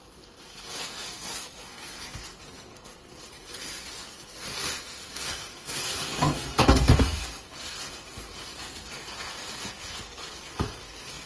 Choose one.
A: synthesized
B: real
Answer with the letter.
A